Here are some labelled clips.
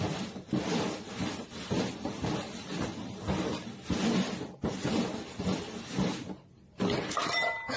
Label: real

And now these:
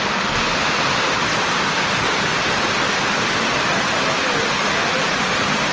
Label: real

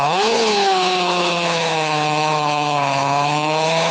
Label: fake